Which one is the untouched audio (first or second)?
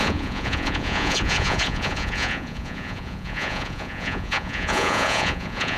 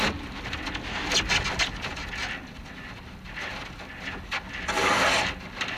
second